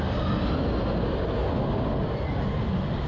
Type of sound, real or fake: real